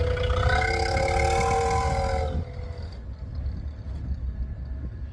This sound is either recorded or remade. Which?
recorded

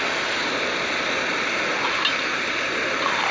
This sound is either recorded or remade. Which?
recorded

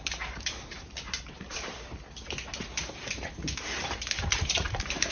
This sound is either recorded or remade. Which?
remade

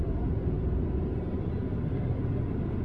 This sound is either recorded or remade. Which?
recorded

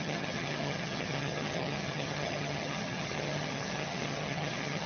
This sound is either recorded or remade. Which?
remade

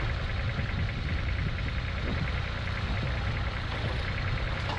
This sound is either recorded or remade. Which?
recorded